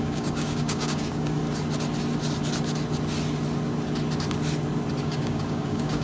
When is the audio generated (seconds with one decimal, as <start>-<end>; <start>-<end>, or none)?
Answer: 0.0-1.4; 5.0-6.0